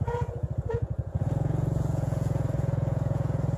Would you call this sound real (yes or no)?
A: no